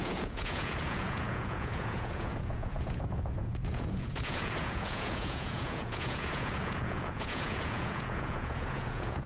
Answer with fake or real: fake